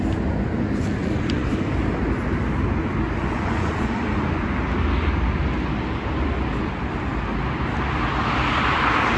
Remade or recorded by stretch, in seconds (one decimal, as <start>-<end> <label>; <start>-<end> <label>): 0.0-1.0 recorded; 1.0-1.5 remade; 1.5-3.2 recorded; 3.2-4.0 remade; 4.0-9.2 recorded